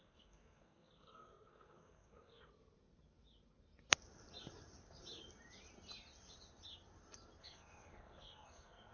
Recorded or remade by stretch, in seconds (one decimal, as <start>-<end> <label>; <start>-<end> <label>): 0.0-2.5 remade; 2.5-7.4 recorded; 7.4-8.9 remade